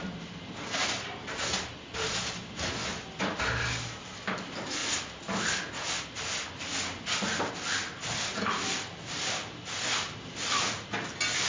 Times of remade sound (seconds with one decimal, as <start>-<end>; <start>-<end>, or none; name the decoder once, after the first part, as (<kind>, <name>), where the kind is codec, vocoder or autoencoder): none